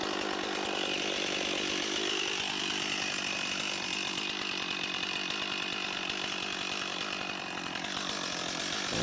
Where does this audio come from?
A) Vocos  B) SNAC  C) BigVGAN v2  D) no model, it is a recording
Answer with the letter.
D